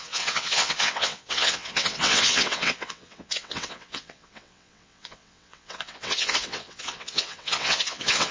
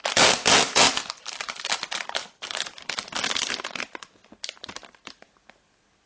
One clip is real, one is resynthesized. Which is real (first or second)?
second